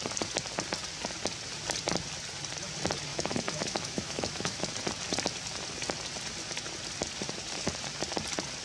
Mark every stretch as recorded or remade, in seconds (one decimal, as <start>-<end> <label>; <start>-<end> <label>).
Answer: 0.0-3.1 recorded; 3.1-4.7 remade; 4.7-8.6 recorded